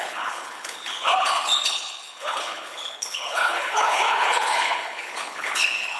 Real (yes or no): no